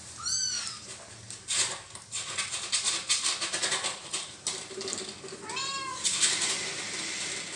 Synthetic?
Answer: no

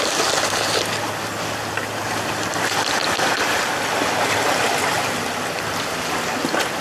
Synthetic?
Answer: no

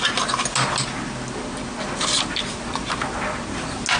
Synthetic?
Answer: no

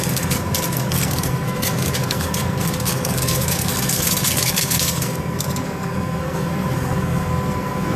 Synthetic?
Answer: yes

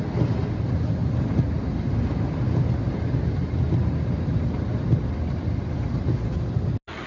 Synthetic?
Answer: no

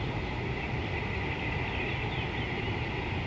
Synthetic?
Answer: no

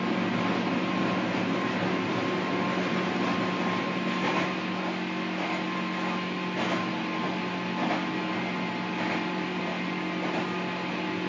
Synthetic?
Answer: no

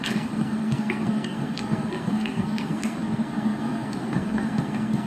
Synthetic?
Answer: yes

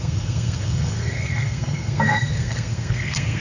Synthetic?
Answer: yes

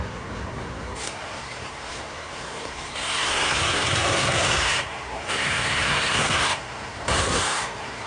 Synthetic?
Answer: yes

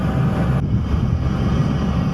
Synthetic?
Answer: no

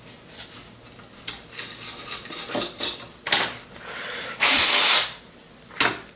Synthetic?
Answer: no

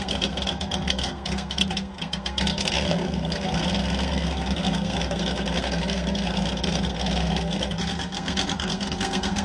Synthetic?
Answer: yes